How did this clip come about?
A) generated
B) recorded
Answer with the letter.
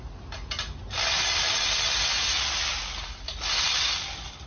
B